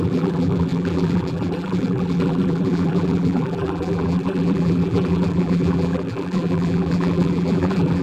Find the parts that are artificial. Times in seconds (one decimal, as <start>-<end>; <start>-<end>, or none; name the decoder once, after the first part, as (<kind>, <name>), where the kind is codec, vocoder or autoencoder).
0.0-8.0 (vocoder, BigVGAN v2)